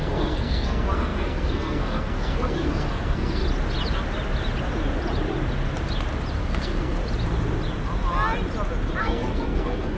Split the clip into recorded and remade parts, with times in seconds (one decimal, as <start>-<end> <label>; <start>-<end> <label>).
0.0-3.4 remade; 3.4-6.4 recorded; 6.4-7.0 remade; 7.0-9.0 recorded; 9.0-10.0 remade